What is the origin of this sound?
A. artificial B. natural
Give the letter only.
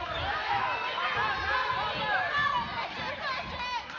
B